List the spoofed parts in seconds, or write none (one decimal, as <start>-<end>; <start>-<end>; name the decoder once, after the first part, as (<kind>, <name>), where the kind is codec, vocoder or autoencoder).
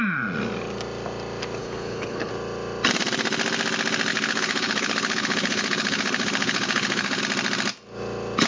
1.6-2.3 (codec, HILCodec); 4.1-7.2